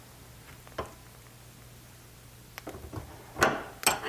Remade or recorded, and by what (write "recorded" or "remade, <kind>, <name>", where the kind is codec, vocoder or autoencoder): recorded